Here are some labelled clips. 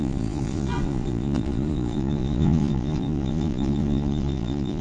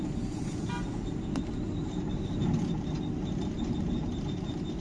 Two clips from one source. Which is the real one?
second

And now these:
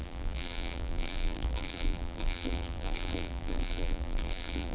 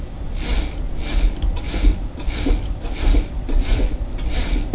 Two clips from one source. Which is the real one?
second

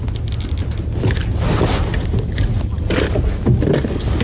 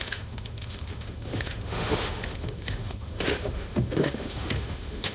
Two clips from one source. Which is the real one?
first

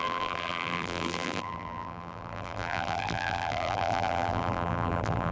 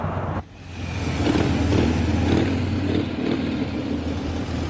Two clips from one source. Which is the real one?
second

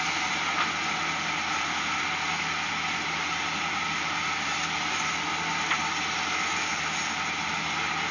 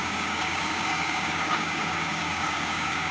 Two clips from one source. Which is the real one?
first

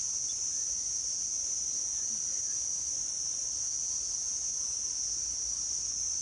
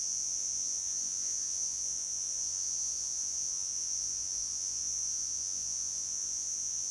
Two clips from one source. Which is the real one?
first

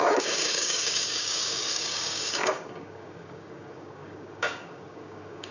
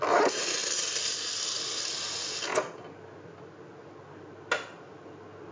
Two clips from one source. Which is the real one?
second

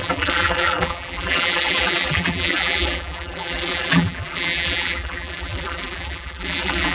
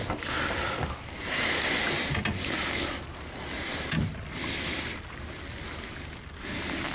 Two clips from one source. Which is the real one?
second